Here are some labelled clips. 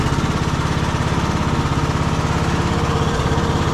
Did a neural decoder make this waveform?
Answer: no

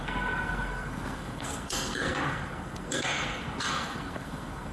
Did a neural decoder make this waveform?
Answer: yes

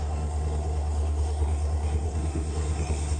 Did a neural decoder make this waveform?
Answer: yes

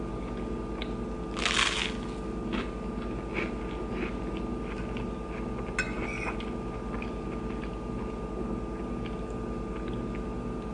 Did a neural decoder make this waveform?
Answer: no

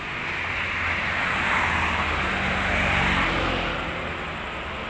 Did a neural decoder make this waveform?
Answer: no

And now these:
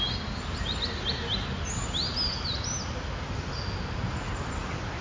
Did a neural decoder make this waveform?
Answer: no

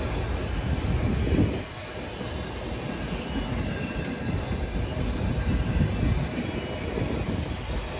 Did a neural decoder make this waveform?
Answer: no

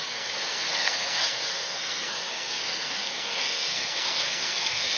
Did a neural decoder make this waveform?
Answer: yes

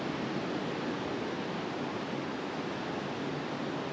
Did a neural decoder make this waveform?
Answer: no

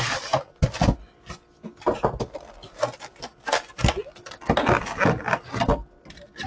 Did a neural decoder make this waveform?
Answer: no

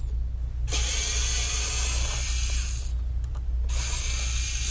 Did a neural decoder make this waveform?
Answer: no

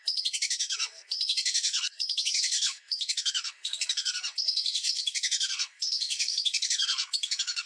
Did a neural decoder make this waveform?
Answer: yes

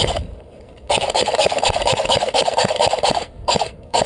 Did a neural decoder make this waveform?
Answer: yes